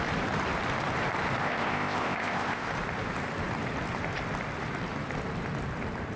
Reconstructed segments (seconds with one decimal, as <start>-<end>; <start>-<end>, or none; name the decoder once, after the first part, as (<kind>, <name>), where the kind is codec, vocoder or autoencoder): 1.4-2.7 (codec, ZipCodec)